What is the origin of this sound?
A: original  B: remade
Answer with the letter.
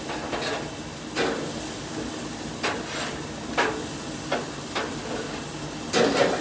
A